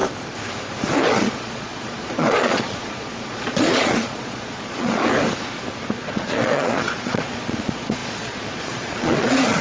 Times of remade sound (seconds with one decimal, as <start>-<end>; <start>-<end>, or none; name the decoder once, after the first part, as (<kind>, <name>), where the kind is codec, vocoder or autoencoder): 1.1-5.0 (vocoder, Vocos); 5.9-9.6